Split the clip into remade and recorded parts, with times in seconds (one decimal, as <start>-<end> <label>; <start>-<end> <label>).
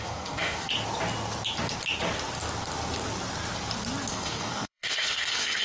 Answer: 0.0-0.7 remade; 0.7-4.1 recorded; 4.1-5.6 remade